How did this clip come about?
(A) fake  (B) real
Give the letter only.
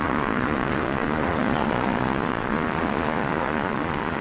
A